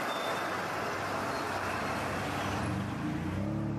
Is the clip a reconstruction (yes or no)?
no